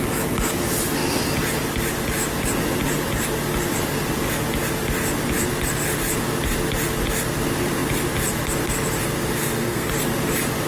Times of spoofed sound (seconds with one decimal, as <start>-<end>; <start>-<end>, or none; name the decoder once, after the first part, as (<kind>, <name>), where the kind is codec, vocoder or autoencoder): 9.4-9.9 (codec, SNAC)